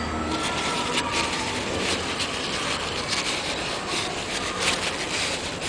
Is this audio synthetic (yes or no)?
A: no